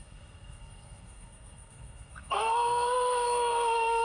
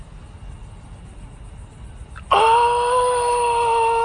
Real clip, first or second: second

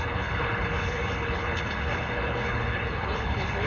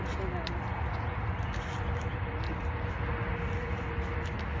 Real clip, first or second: second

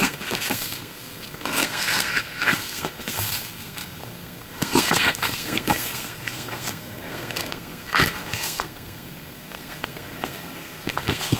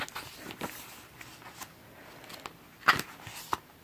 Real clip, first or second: second